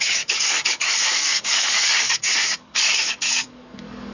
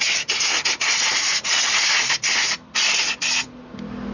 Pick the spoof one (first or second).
first